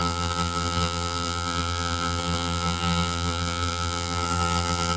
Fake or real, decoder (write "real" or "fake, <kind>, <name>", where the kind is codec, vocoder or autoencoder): fake, vocoder, BigVGAN v2